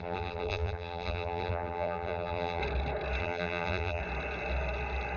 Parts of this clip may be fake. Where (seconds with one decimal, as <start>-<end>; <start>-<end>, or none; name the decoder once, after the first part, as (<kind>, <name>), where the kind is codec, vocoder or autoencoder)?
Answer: 0.0-2.6 (vocoder, BigVGAN v2); 3.2-4.0